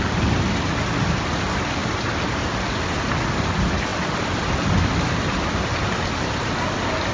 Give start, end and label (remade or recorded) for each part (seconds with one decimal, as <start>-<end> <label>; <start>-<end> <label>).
0.0-7.1 recorded